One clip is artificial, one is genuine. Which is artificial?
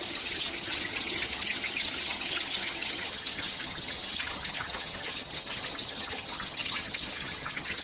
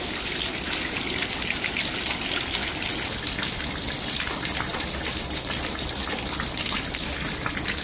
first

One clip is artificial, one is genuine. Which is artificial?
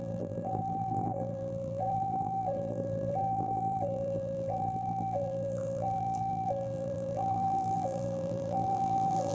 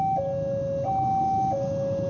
first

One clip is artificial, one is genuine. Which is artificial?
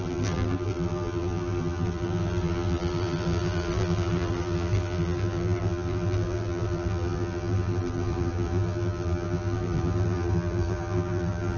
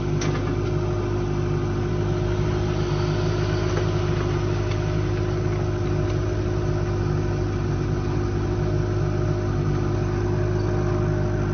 first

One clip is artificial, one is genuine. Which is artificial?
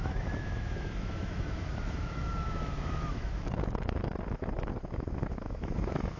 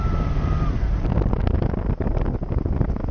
first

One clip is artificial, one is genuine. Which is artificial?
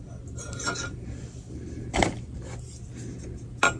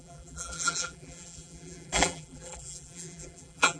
second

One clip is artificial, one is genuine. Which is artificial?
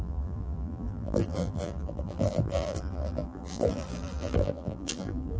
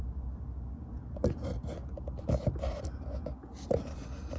first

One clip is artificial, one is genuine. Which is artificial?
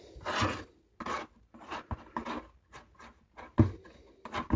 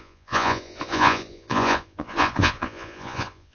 second